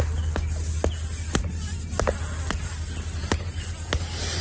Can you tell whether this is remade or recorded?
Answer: recorded